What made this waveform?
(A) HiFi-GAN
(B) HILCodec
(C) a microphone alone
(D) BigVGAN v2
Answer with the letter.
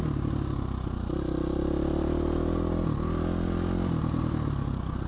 C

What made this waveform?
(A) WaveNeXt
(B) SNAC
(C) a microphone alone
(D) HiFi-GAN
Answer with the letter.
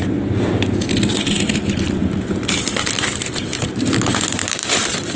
C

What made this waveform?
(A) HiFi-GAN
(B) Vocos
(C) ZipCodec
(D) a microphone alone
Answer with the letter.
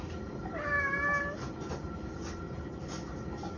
D